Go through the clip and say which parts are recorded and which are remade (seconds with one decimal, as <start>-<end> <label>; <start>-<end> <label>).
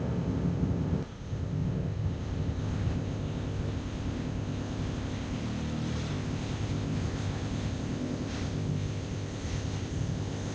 0.0-5.4 remade; 5.4-6.1 recorded; 6.1-10.5 remade